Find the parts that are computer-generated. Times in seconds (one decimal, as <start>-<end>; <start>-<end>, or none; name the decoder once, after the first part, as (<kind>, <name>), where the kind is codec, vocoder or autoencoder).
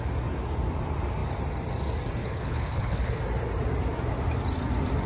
2.2-3.2 (codec, HILCodec)